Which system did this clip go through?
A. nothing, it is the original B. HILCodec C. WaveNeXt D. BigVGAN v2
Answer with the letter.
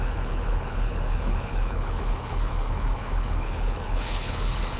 B